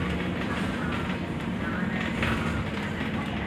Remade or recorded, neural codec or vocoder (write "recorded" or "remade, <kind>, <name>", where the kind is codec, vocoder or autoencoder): recorded